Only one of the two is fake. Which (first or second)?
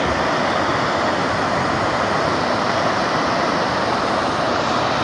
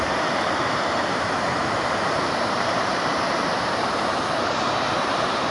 second